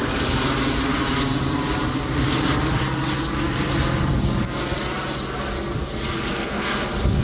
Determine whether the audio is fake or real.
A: real